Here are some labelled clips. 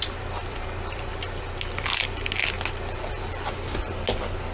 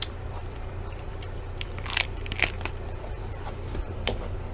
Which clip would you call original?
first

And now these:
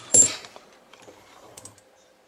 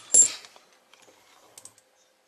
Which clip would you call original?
second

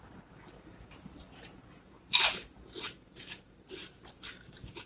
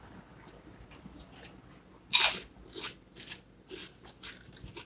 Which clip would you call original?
second